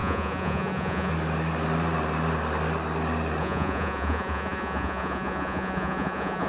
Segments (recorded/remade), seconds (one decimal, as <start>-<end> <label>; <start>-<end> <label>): 0.0-1.1 remade; 1.1-3.4 recorded; 3.4-6.5 remade